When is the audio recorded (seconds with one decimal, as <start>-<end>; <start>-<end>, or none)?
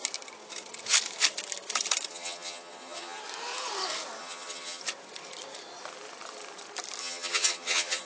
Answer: 0.0-2.1; 3.2-4.2; 4.8-7.0